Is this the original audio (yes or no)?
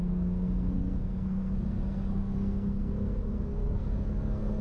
no